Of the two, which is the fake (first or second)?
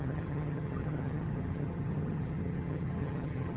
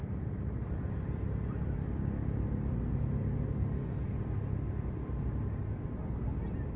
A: first